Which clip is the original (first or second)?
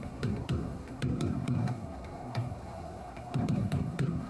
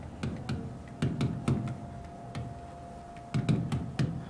second